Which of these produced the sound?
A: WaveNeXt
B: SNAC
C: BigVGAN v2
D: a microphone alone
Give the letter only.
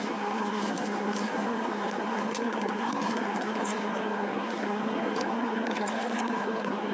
B